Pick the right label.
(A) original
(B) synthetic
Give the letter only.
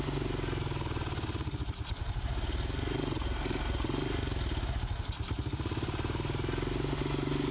A